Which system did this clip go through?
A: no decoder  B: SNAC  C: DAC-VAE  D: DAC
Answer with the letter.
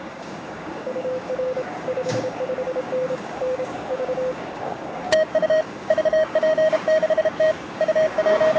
D